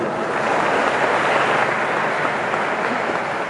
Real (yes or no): yes